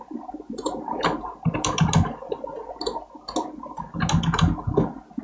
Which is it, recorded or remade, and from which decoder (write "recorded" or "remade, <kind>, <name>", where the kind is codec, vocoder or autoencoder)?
recorded